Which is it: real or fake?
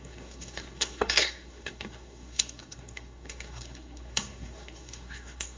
fake